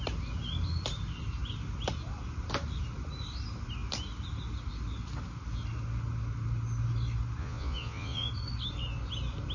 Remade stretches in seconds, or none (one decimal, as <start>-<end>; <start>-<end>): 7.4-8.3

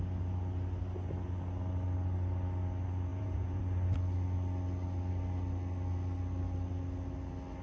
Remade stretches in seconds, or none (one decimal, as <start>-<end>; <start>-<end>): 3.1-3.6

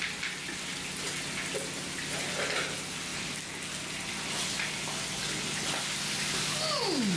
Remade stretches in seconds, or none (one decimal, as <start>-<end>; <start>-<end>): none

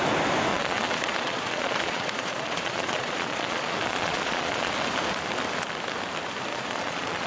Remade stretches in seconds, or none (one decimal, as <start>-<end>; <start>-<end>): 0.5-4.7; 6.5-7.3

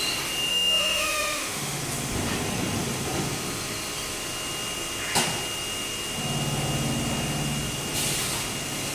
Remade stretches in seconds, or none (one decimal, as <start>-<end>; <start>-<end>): 0.5-1.8